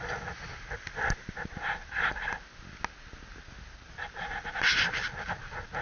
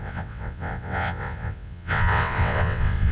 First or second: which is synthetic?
second